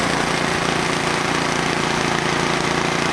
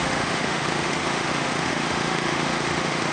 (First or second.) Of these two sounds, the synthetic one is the second